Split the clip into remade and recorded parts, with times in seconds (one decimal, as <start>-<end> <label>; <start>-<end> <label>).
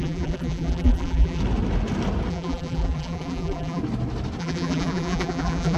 0.0-1.4 remade; 1.4-2.3 recorded; 2.3-3.8 remade; 3.8-4.4 recorded; 4.4-5.8 remade